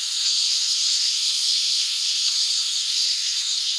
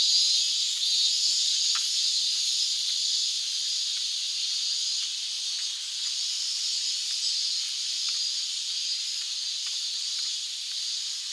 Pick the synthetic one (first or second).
first